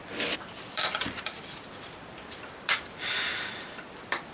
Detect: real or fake fake